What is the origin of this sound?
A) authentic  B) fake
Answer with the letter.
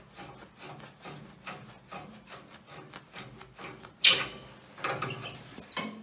A